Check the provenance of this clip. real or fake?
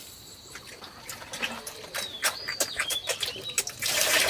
fake